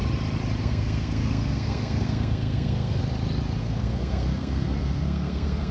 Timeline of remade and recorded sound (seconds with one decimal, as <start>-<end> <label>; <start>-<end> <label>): 0.0-0.6 recorded; 0.6-3.0 remade; 3.0-3.6 recorded; 3.6-5.7 remade